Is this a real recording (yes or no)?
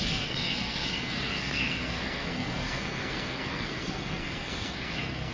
no